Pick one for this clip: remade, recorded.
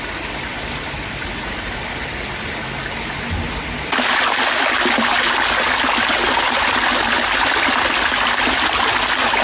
recorded